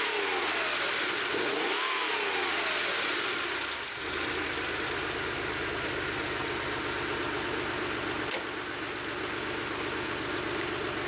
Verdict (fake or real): real